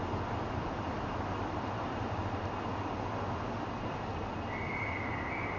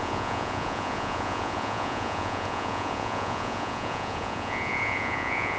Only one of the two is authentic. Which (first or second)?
first